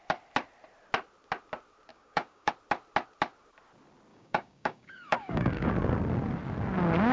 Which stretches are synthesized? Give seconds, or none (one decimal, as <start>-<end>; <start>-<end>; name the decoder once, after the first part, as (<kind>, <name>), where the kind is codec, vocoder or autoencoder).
1.9-2.5 (codec, DAC); 4.1-5.7